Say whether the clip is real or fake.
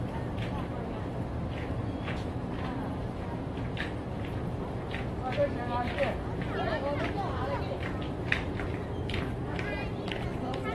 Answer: fake